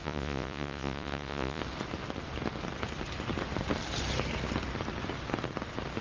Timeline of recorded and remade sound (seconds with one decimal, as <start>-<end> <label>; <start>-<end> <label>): 0.0-1.6 remade; 1.6-6.0 recorded